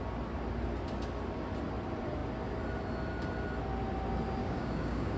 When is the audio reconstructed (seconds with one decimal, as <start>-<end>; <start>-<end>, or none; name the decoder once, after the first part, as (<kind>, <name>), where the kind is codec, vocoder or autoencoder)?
4.4-5.2 (codec, DAC)